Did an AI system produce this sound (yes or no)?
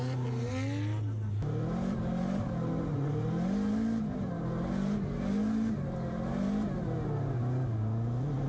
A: no